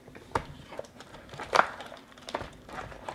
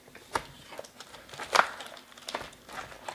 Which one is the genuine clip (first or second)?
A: second